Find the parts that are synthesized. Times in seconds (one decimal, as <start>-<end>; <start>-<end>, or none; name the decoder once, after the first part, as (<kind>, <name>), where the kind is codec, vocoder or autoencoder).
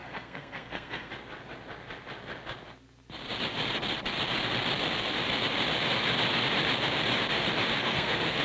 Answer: 0.0-1.1 (codec, SNAC); 7.8-8.4